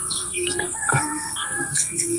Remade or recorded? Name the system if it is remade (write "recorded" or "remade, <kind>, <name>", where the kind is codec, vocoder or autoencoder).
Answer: remade, codec, SNAC